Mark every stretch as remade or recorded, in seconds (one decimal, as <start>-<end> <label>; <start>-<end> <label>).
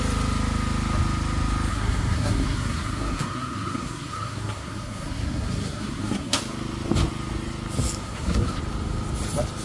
0.0-1.7 recorded; 1.7-6.4 remade; 6.4-8.0 recorded; 8.0-8.6 remade; 8.6-9.6 recorded